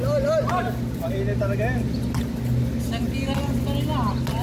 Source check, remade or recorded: recorded